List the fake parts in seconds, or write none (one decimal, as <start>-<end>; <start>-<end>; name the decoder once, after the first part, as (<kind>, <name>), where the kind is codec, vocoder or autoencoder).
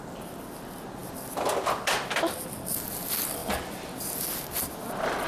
none